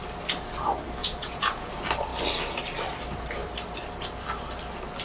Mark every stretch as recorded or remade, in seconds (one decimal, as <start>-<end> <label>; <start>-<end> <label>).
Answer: 0.0-1.0 recorded; 1.0-1.7 remade; 1.7-5.0 recorded